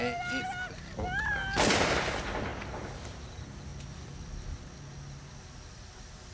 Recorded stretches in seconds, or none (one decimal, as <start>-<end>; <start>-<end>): 0.0-6.3